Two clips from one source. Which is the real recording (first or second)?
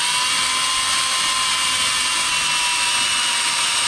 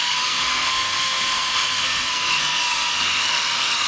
first